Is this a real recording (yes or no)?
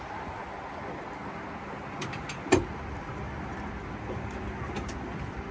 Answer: yes